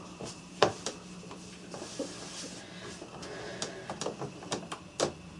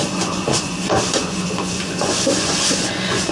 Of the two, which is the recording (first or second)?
first